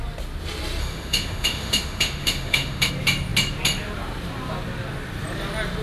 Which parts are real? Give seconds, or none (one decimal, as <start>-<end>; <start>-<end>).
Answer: 0.0-0.8; 2.9-5.8